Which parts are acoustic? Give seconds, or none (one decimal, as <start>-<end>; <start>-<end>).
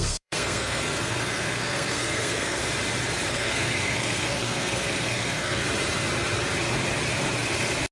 2.6-3.3; 5.6-7.9